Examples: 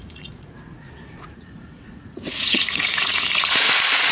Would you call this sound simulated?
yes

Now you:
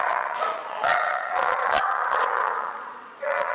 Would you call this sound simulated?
yes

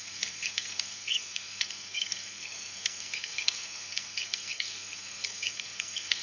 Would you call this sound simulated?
yes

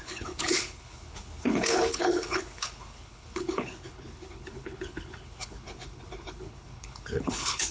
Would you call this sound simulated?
yes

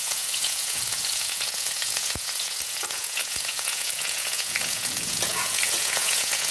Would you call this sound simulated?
yes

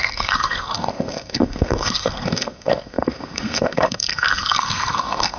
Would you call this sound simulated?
yes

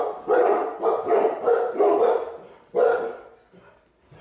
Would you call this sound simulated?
no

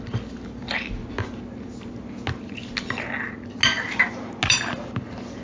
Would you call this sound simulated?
no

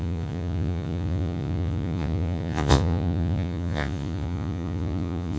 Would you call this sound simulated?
yes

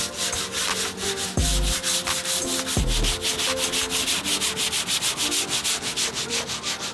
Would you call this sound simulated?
no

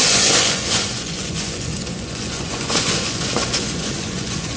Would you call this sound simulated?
yes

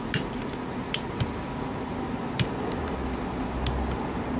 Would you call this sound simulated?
no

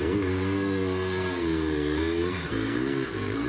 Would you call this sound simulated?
yes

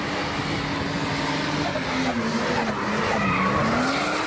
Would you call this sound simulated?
no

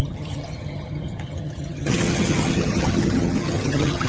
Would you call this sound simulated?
yes